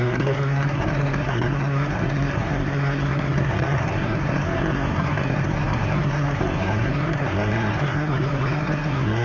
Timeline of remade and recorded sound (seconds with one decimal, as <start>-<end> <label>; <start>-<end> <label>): 0.0-9.2 remade